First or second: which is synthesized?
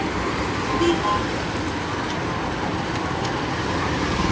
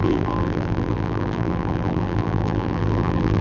second